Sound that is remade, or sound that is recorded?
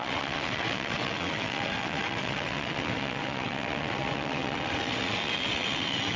remade